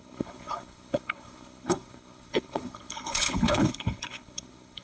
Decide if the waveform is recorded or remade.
remade